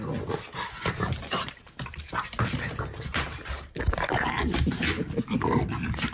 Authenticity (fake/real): fake